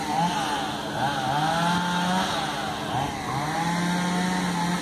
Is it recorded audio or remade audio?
recorded